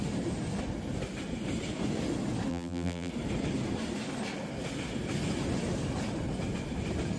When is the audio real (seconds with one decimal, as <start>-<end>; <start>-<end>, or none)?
0.0-2.5; 3.1-7.2